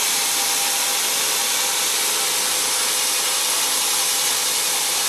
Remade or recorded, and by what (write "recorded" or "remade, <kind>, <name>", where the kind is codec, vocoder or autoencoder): recorded